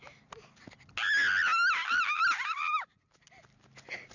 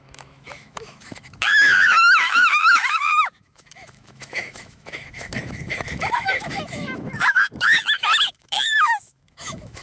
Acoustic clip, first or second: first